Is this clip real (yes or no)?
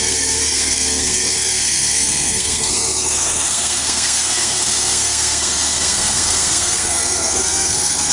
no